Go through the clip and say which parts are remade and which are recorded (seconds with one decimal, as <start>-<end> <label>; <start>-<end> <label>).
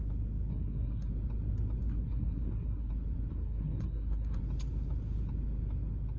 0.0-0.5 recorded; 0.5-1.1 remade; 1.1-1.9 recorded; 1.9-2.9 remade; 2.9-3.3 recorded; 3.3-4.4 remade; 4.4-6.2 recorded